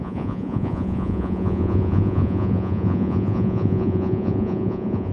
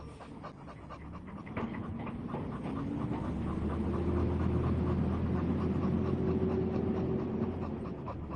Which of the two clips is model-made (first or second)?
first